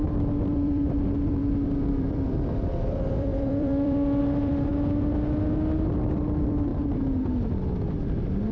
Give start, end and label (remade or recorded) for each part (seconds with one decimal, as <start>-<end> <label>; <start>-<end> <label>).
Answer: 0.0-1.4 remade; 1.4-1.9 recorded; 1.9-4.7 remade; 4.7-6.1 recorded; 6.1-8.5 remade